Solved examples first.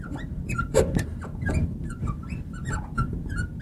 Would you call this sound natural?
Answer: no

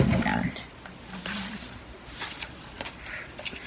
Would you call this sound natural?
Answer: yes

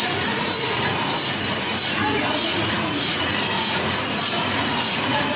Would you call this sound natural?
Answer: no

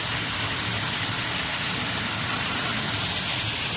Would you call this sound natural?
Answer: yes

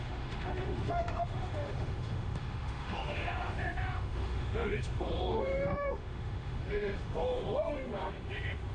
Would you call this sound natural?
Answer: no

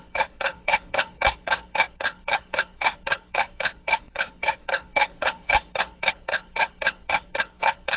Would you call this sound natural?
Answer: no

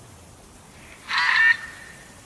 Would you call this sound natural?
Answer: yes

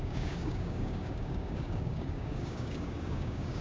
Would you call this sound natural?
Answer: no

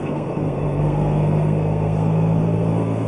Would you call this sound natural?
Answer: no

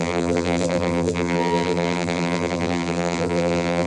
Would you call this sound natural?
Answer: no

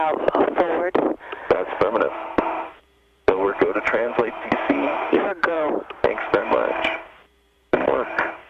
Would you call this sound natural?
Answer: no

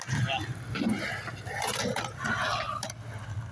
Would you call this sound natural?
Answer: yes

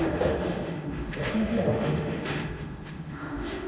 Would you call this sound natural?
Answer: no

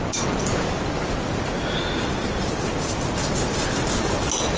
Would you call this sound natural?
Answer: yes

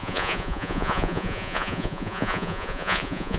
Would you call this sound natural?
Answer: no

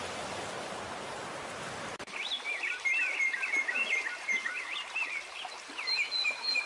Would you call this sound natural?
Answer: no